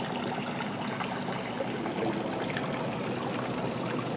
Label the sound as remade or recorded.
recorded